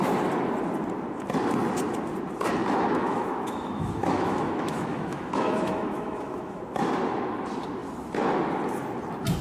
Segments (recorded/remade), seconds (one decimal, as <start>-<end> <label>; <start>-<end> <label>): 0.0-2.6 recorded; 2.6-6.6 remade; 6.6-9.4 recorded